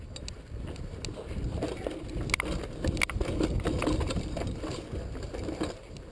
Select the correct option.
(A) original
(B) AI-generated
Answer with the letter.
A